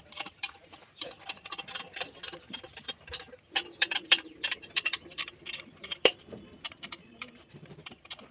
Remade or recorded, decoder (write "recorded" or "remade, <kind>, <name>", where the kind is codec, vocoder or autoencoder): remade, vocoder, BigVGAN v2